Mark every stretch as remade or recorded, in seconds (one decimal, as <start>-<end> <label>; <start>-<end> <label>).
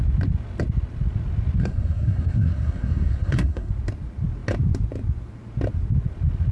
0.0-1.6 recorded; 1.6-3.7 remade; 3.7-6.5 recorded